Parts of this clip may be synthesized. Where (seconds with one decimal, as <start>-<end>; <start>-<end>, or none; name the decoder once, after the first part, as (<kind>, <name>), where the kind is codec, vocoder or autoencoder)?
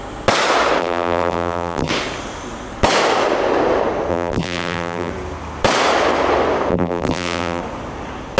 0.8-1.9 (vocoder, BigVGAN v2); 4.1-5.1; 6.7-7.6